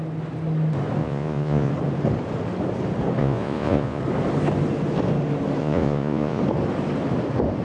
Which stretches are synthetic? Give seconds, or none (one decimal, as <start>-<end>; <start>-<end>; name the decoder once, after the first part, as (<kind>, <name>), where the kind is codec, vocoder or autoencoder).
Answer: 1.0-1.7 (vocoder, Vocos); 3.2-4.0; 5.6-6.4